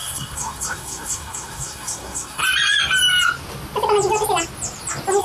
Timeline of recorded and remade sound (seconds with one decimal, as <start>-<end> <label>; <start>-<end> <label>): 0.0-2.4 remade; 2.4-5.2 recorded